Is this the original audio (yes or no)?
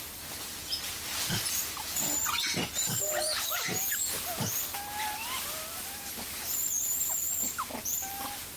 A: no